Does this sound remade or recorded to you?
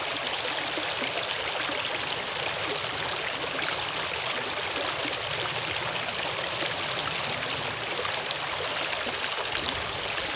recorded